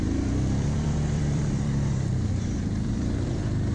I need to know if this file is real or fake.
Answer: fake